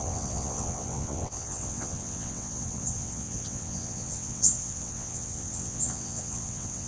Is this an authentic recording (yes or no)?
no